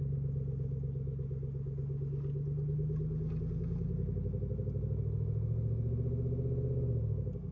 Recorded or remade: recorded